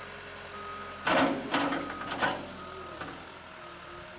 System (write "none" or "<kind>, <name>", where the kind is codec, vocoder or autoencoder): none